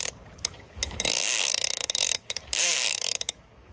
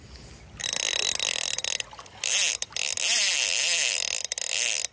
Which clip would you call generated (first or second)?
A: first